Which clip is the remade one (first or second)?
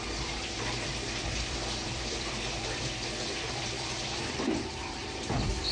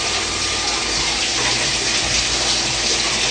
first